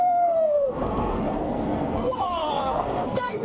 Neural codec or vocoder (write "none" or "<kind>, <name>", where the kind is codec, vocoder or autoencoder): codec, SNAC